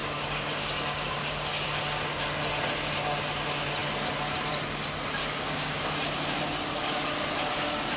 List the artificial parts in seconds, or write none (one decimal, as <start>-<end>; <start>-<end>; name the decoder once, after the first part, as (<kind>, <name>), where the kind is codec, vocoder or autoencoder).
0.0-1.8 (codec, DAC); 5.2-5.8